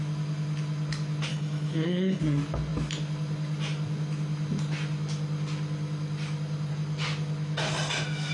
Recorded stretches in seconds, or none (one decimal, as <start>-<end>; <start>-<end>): 0.0-1.3; 2.2-8.3